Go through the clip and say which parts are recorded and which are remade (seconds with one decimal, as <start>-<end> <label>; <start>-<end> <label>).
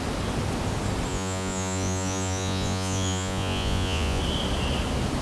0.0-1.1 recorded; 1.1-4.2 remade; 4.2-5.2 recorded